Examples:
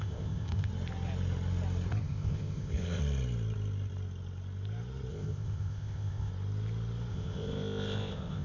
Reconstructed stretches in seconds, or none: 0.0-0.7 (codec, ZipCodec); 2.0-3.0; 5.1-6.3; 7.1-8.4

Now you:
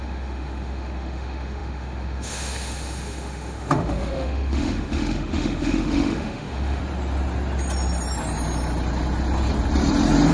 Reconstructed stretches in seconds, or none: 0.0-6.8 (autoencoder, DAC-VAE)

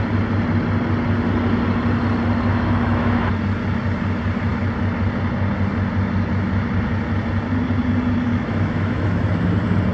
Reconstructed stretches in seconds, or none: 2.5-3.2 (autoencoder, DAC-VAE); 8.3-9.2

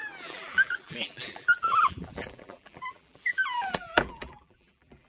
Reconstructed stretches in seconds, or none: 0.0-5.1 (vocoder, BigVGAN v2)

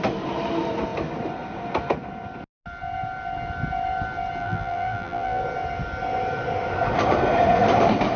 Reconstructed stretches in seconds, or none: 4.4-5.4 (vocoder, BigVGAN v2)

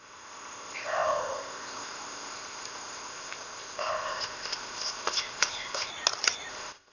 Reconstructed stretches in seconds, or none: 0.0-5.9 (codec, ZipCodec); 6.5-6.9

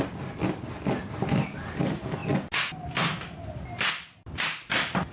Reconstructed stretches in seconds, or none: none